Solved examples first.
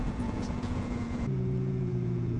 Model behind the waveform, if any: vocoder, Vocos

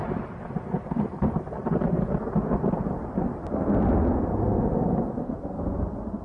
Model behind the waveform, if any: none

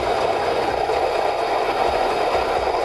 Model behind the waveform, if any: vocoder, Vocos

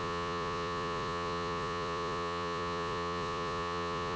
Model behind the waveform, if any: vocoder, Vocos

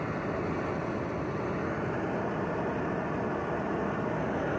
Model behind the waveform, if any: none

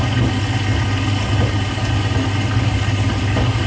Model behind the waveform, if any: none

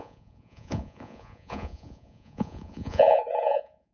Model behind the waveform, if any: vocoder, Vocos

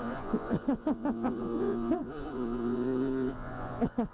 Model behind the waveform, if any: vocoder, Vocos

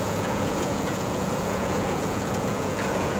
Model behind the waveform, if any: vocoder, Vocos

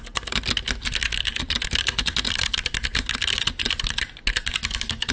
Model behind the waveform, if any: none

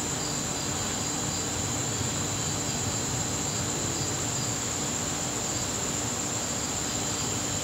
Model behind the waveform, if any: none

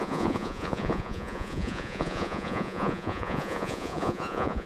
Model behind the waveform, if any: vocoder, Vocos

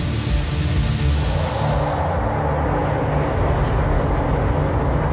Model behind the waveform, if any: none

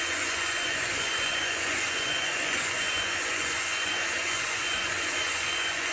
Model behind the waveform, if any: vocoder, Vocos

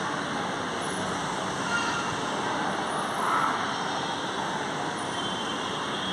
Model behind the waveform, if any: none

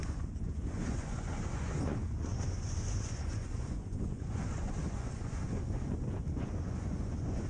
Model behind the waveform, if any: vocoder, Vocos